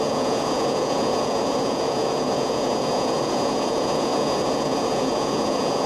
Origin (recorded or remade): remade